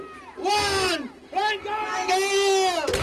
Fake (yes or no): no